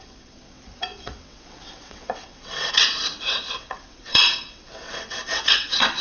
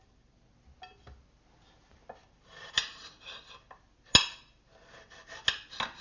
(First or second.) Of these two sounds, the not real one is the first